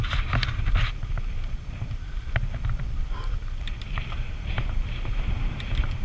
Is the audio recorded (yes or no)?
no